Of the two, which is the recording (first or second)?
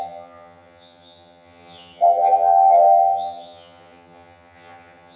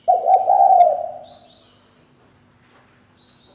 second